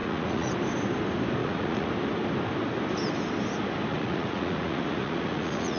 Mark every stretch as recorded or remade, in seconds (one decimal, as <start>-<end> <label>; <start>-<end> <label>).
0.0-0.5 remade; 0.5-1.4 recorded; 1.4-1.9 remade; 1.9-3.9 recorded; 3.9-5.8 remade